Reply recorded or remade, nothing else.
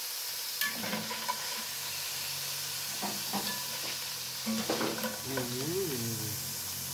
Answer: recorded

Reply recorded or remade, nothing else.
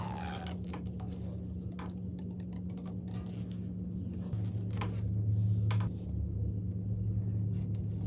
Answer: recorded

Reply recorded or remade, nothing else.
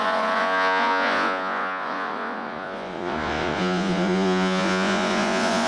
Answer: remade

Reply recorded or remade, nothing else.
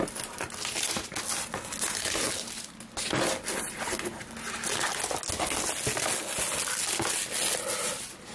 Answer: recorded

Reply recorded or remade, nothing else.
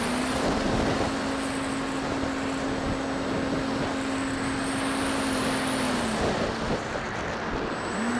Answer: recorded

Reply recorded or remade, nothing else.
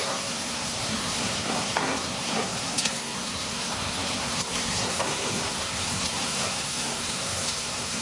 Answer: remade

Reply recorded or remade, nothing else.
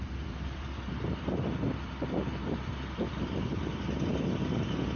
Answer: remade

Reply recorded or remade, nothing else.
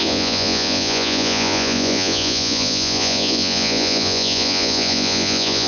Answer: remade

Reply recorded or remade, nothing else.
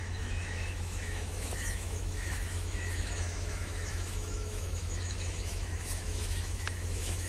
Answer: remade